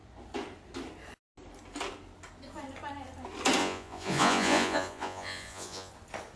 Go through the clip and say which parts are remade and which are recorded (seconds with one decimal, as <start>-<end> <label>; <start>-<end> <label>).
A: 0.0-3.6 recorded; 3.6-5.9 remade; 5.9-6.4 recorded